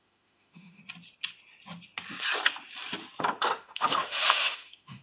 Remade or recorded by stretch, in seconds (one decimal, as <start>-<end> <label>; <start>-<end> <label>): 0.0-0.8 remade; 0.8-3.4 recorded; 3.4-5.0 remade